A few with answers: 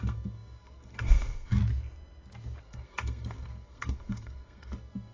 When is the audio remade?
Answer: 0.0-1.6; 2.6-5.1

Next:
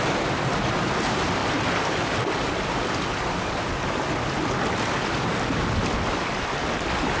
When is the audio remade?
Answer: none